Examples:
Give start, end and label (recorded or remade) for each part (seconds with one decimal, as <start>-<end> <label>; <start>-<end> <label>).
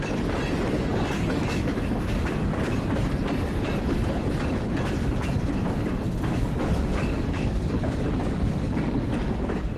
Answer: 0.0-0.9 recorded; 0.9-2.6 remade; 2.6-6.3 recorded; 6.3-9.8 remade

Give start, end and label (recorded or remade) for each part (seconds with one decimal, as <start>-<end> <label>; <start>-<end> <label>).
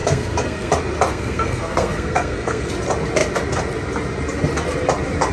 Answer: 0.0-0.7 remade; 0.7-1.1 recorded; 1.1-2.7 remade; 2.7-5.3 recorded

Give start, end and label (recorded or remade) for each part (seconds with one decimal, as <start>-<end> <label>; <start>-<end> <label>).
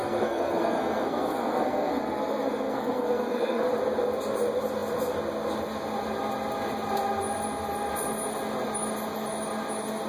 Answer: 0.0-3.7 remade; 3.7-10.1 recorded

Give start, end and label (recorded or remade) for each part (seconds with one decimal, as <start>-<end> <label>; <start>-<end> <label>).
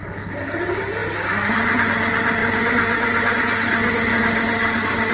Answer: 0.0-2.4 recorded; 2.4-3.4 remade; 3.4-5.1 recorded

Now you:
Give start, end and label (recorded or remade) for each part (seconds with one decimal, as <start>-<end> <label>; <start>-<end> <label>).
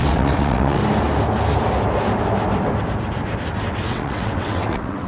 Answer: 0.0-0.8 remade; 0.8-3.9 recorded; 3.9-5.1 remade